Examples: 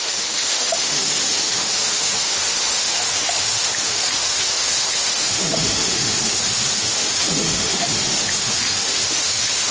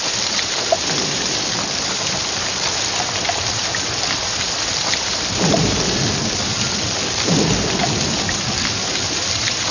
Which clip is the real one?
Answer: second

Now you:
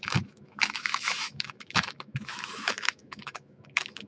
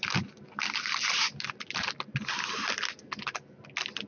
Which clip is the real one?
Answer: second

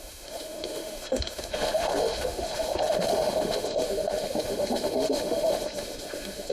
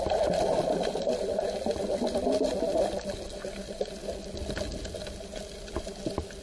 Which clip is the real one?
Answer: second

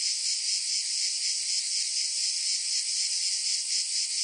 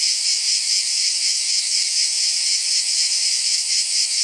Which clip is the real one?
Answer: first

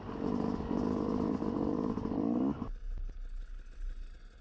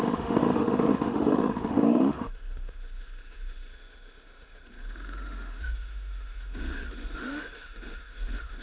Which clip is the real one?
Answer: first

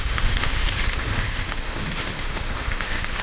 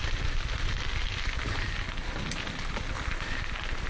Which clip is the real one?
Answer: second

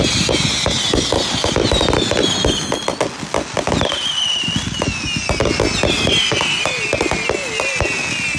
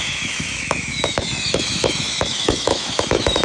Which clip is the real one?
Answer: first